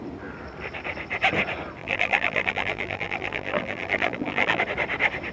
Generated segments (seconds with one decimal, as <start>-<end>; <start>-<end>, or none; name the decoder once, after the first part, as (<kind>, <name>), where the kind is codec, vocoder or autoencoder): 1.8-4.6 (vocoder, BigVGAN v2)